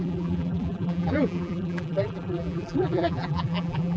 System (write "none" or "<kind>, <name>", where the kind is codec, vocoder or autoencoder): vocoder, BigVGAN v2